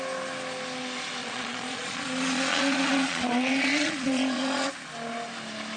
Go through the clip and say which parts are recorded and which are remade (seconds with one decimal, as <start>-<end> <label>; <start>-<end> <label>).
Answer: 0.0-1.2 recorded; 1.2-4.7 remade; 4.7-5.8 recorded